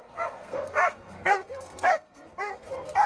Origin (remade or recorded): remade